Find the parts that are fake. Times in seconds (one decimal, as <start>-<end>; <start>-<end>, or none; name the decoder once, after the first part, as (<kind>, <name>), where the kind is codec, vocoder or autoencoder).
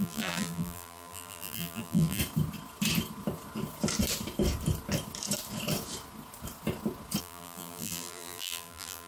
0.0-2.2 (vocoder, BigVGAN v2); 7.2-9.1